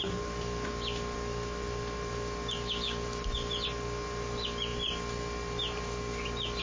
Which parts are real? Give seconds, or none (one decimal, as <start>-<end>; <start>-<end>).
0.0-6.6

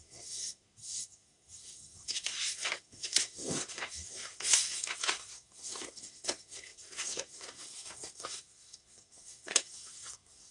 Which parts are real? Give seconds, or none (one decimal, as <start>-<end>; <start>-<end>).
none

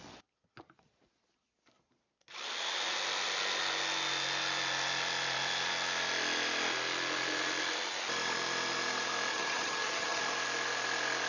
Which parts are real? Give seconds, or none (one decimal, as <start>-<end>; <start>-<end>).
0.0-9.3; 10.2-11.3

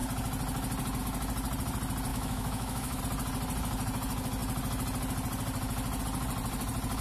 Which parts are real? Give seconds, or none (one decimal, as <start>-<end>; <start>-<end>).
0.0-2.1; 3.0-7.0